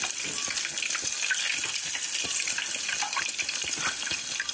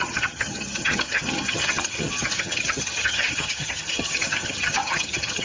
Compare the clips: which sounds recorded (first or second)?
first